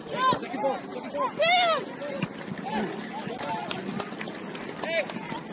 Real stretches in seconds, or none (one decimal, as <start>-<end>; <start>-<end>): 0.0-5.5

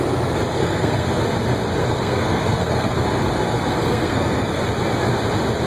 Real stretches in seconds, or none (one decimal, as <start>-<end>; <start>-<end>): 0.0-0.6; 1.2-1.8; 4.6-5.7

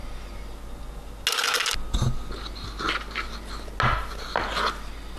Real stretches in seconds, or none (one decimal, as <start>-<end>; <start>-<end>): 0.0-5.2

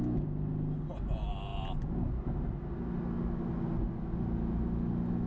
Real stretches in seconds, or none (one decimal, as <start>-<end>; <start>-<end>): 0.0-5.3

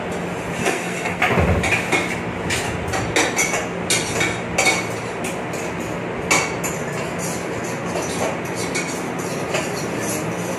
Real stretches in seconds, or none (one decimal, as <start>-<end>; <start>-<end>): 0.0-0.6; 1.2-10.6

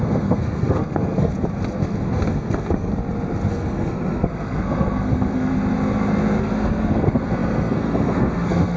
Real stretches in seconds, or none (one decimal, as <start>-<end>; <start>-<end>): 1.3-1.8; 2.9-3.5; 5.5-6.4